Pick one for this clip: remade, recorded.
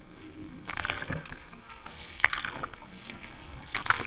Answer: remade